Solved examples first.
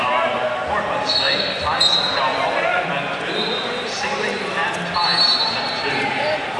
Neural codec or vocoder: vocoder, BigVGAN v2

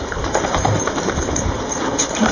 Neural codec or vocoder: vocoder, BigVGAN v2